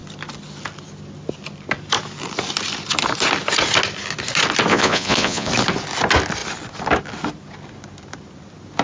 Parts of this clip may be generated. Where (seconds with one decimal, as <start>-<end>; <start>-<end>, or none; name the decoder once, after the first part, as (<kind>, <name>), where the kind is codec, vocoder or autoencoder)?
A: 4.7-5.5 (vocoder, Vocos)